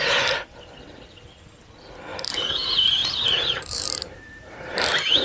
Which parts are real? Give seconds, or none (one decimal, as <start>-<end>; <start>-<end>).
0.0-2.1